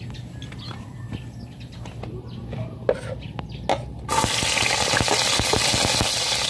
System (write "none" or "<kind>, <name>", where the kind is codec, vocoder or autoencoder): none